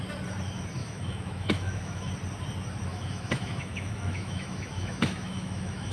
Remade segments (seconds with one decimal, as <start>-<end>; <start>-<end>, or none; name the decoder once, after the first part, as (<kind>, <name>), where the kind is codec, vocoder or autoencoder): 0.8-2.1 (autoencoder, DAC-VAE); 2.9-5.9